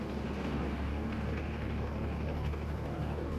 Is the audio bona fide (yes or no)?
no